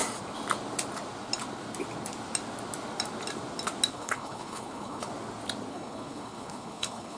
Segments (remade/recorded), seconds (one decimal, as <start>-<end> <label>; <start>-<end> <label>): 0.0-3.9 recorded; 3.9-5.1 remade; 5.1-5.7 recorded; 5.7-7.2 remade